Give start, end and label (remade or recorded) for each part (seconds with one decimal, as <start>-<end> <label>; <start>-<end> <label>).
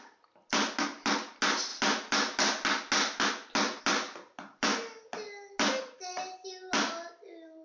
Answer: 0.0-7.6 recorded